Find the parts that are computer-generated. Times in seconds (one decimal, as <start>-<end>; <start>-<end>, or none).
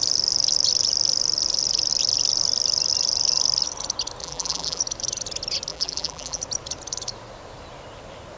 4.2-4.8; 5.7-6.4